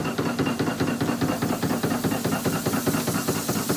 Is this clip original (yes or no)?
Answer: yes